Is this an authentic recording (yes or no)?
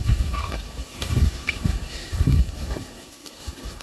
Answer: no